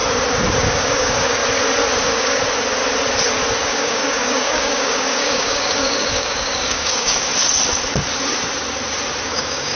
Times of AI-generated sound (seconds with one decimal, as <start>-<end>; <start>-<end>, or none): 0.7-1.4; 2.0-2.4; 3.6-7.3; 9.2-9.7